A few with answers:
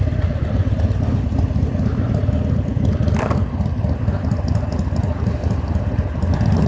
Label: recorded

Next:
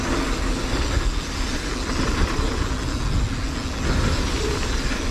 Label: recorded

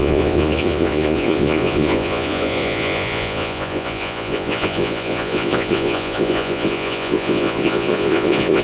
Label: remade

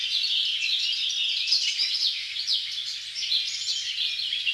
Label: recorded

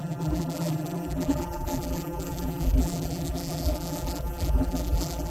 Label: remade